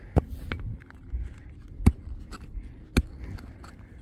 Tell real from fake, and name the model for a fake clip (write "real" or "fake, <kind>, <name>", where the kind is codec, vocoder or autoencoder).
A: real